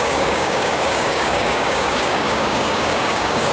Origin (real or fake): fake